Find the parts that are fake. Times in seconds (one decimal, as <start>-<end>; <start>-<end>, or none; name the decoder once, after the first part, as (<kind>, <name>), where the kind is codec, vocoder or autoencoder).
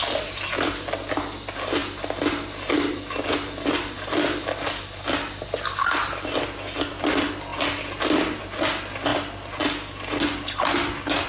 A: none